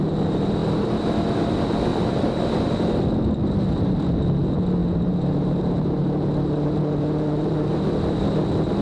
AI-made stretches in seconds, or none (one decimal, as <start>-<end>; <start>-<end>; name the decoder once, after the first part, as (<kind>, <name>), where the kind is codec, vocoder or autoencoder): 1.9-2.4 (vocoder, BigVGAN v2); 4.8-7.9